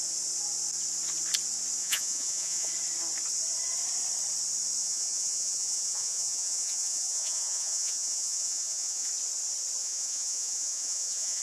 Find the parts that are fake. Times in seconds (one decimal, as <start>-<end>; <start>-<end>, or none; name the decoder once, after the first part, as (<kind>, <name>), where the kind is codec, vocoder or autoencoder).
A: 1.8-2.7 (vocoder, Vocos); 4.8-9.1; 9.8-11.4

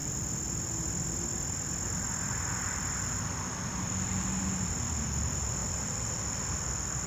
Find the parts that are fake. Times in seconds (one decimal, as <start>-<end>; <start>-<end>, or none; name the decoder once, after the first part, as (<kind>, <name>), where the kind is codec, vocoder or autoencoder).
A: 0.0-2.8 (vocoder, BigVGAN v2); 5.6-6.2